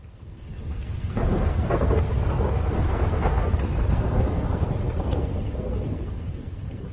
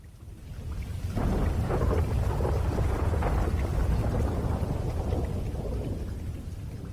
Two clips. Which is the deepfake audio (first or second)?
first